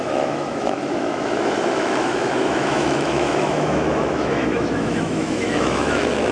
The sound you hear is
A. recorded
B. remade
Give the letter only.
B